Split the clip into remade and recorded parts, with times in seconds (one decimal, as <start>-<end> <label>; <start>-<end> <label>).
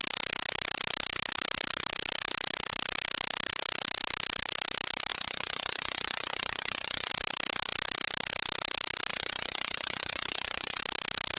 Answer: 0.0-5.1 recorded; 5.1-7.1 remade; 7.1-9.1 recorded; 9.1-10.8 remade; 10.8-11.4 recorded